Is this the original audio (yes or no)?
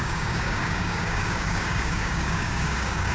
no